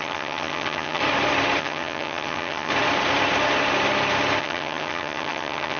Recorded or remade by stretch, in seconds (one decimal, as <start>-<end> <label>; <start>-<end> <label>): 0.0-1.0 remade; 1.0-1.6 recorded; 1.6-2.7 remade; 2.7-4.4 recorded; 4.4-5.8 remade